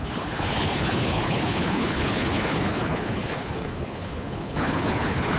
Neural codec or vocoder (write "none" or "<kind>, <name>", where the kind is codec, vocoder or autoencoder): codec, HILCodec